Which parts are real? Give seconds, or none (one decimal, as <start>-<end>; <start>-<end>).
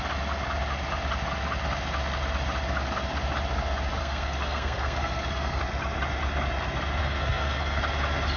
0.0-4.0; 5.6-7.0; 7.8-8.4